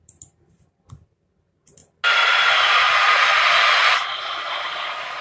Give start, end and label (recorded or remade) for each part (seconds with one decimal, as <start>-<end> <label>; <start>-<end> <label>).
0.0-5.2 recorded